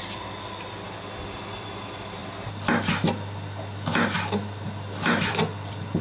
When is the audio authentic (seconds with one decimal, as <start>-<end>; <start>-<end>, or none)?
0.0-6.0